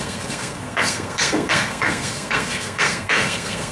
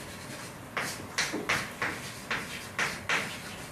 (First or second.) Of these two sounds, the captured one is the second